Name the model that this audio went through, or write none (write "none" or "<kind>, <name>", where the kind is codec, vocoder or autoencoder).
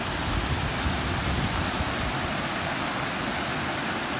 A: none